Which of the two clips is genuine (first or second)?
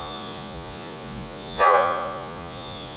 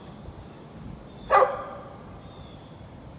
second